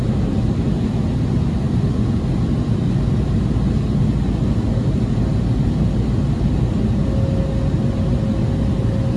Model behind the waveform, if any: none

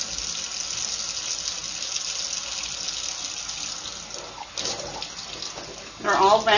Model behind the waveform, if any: none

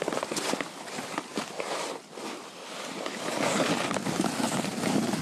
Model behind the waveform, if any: none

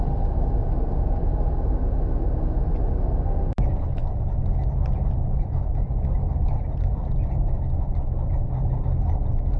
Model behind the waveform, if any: none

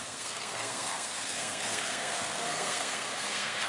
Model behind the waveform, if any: codec, SNAC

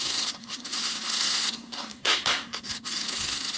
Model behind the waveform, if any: codec, SNAC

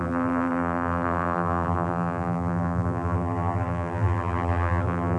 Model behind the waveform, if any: vocoder, BigVGAN v2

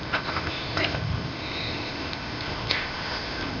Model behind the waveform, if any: codec, ZipCodec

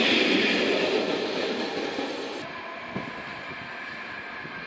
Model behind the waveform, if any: none